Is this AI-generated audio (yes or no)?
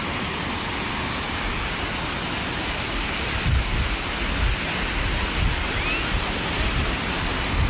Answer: no